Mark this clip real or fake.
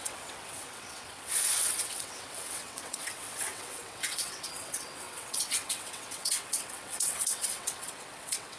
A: fake